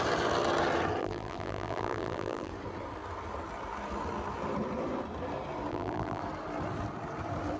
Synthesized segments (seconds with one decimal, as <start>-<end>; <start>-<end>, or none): 1.0-2.5; 5.7-6.2

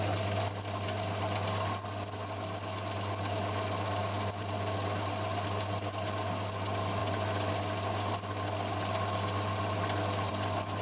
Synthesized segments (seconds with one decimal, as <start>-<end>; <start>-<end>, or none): none

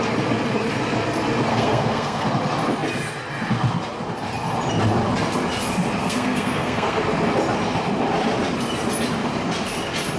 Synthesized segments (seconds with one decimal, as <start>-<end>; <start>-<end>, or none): 1.5-2.3; 6.0-7.0

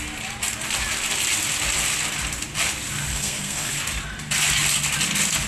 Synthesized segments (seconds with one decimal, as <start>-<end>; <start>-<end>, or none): 3.1-3.7

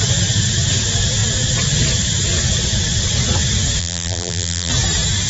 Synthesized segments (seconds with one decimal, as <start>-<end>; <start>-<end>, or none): 3.8-4.7

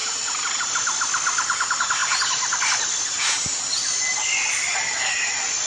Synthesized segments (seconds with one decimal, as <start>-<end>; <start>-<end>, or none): none

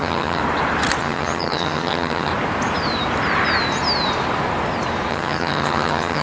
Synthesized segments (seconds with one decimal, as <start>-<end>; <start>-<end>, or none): 0.0-0.4; 1.0-2.3; 5.1-6.2